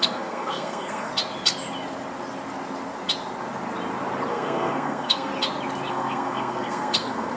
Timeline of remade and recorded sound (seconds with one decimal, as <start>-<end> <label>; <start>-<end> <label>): 0.0-1.1 remade; 1.1-4.3 recorded; 4.3-5.3 remade; 5.3-5.9 recorded; 5.9-7.4 remade